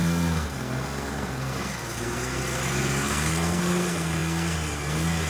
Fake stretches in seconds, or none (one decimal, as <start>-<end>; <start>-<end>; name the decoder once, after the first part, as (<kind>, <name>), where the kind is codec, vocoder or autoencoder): 0.0-5.3 (codec, SNAC)